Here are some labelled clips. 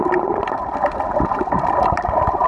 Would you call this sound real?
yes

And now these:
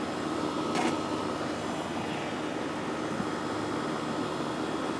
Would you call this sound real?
yes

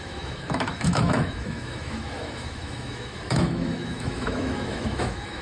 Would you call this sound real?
no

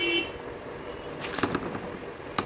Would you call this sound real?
yes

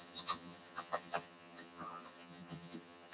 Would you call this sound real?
no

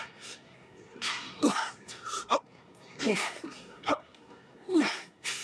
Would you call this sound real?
no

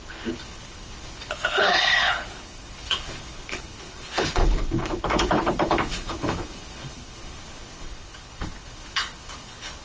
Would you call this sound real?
no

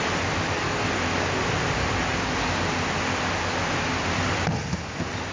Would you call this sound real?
yes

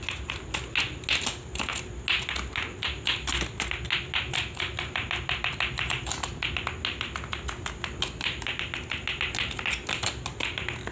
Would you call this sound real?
yes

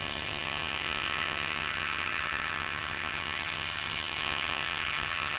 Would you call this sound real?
no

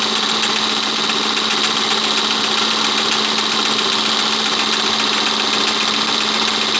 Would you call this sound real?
yes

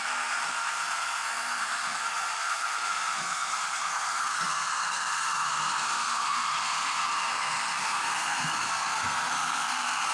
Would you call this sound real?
no